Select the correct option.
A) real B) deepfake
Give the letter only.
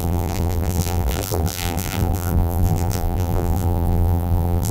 B